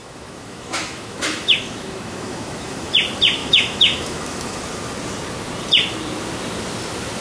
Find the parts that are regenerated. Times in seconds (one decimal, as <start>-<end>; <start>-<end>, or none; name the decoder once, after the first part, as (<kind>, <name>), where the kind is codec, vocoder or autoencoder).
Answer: 0.0-2.9 (autoencoder, DAC-VAE); 3.4-4.6